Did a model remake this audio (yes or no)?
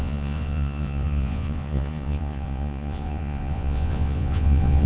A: yes